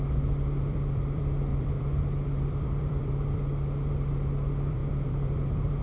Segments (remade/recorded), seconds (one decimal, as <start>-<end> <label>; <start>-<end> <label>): 0.0-5.8 remade